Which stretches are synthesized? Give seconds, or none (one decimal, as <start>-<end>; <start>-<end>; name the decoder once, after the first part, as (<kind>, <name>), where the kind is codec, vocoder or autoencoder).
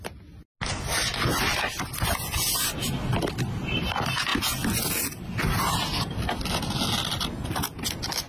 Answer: none